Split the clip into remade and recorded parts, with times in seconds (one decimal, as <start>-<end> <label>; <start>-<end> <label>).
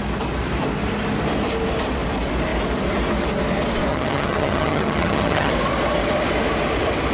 0.0-3.9 recorded; 3.9-5.5 remade; 5.5-7.1 recorded